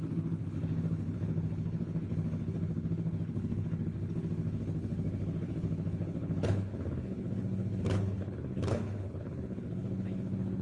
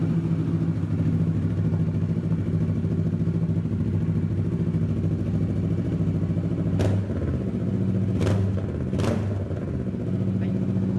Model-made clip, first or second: first